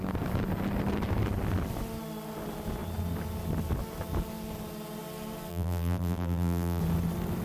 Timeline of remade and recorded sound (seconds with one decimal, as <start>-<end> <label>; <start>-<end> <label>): 0.0-5.5 recorded; 5.5-6.8 remade; 6.8-7.4 recorded